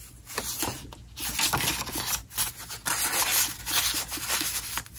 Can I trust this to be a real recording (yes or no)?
yes